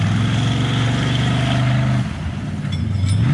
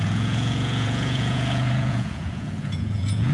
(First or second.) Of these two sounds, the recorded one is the first